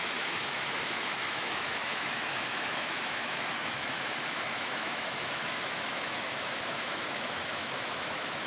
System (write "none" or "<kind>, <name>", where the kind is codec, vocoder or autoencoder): autoencoder, DAC-VAE